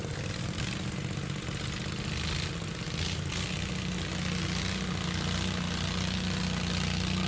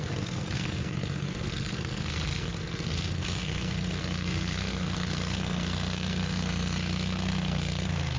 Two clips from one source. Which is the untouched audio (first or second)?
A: first